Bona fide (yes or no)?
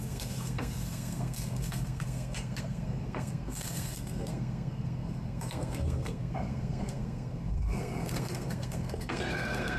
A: no